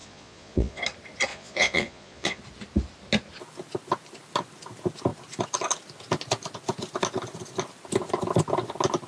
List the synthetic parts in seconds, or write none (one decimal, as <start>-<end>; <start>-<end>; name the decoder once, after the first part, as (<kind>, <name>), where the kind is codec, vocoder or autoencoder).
0.0-0.8 (vocoder, Vocos); 1.3-2.4